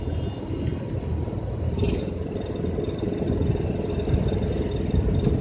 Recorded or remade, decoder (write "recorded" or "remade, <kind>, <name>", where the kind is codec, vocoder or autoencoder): recorded